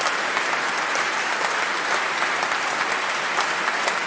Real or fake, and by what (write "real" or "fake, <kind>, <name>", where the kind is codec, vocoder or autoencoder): real